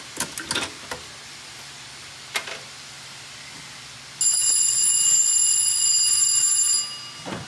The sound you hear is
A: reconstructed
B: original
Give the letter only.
B